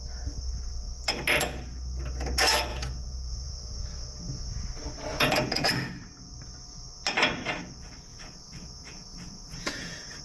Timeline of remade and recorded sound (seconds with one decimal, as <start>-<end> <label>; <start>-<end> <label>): 0.0-2.7 recorded; 2.7-3.8 remade; 3.8-5.1 recorded; 5.1-5.7 remade; 5.7-8.1 recorded; 8.1-10.2 remade